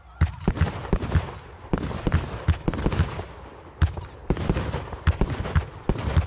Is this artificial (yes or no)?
no